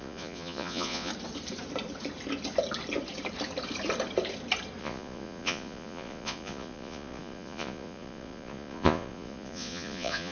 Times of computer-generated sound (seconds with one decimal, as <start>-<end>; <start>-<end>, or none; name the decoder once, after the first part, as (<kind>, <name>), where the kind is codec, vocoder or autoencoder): 0.0-1.1 (vocoder, Vocos); 4.8-10.3